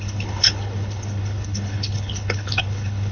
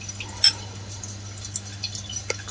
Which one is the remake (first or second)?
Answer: first